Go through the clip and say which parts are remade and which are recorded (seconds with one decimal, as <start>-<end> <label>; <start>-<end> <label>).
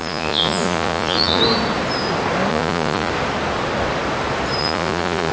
0.0-1.4 remade; 1.4-2.5 recorded; 2.5-3.1 remade; 3.1-4.6 recorded; 4.6-5.3 remade